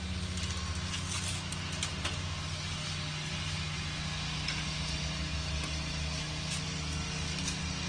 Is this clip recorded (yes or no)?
yes